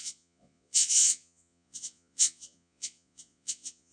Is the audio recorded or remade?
remade